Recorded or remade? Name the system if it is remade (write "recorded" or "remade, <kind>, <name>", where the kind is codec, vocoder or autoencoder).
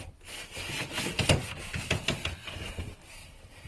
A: recorded